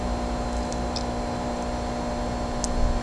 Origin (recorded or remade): recorded